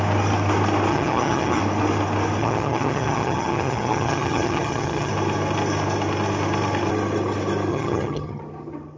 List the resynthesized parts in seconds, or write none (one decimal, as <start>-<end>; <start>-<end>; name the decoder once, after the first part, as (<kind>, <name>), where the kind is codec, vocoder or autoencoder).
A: 0.9-1.6 (vocoder, HiFi-GAN); 2.4-5.1; 7.7-8.4